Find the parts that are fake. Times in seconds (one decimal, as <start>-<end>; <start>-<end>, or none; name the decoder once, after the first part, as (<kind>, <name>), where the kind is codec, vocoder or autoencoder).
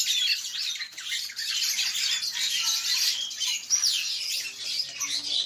0.6-1.5 (vocoder, BigVGAN v2); 2.9-3.7